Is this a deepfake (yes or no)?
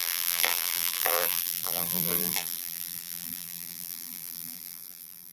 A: yes